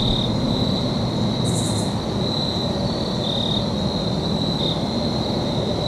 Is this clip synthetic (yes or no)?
no